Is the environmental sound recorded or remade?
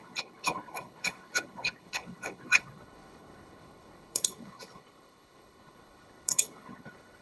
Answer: remade